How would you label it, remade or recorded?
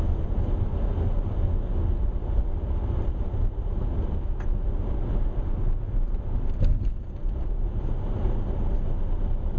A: recorded